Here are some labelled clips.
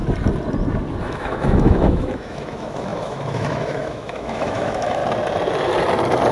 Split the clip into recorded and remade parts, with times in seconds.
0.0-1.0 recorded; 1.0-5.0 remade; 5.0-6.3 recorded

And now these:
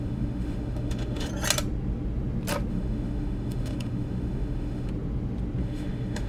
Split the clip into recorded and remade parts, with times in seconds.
0.0-1.3 remade; 1.3-2.7 recorded; 2.7-4.9 remade; 4.9-5.6 recorded; 5.6-6.3 remade

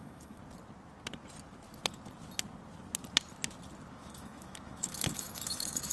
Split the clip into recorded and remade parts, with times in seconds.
0.0-0.4 remade; 0.4-3.9 recorded; 3.9-5.9 remade